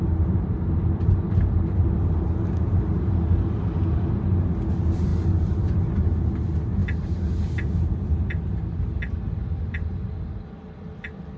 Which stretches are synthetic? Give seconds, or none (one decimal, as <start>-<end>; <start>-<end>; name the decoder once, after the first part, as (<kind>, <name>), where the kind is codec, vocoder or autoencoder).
none